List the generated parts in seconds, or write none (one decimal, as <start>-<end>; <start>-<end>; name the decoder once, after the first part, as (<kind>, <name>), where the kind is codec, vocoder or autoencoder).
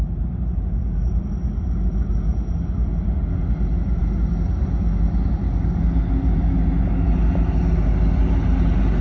none